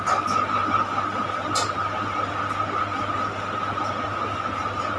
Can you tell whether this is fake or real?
real